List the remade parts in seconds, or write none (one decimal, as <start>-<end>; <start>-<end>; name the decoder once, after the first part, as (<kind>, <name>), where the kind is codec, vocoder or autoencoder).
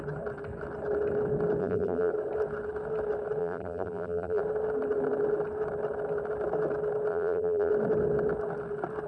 1.6-2.1 (vocoder, BigVGAN v2); 3.4-4.4; 7.1-7.7